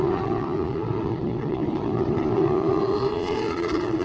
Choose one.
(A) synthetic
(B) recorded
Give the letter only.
A